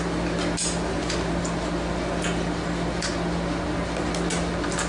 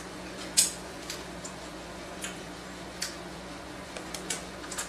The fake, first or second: second